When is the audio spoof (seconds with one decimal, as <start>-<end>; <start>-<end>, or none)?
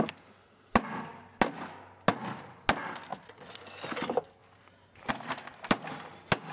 3.1-3.6